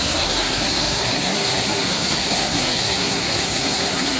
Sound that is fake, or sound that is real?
fake